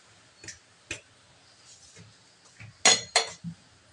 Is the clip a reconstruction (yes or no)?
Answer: no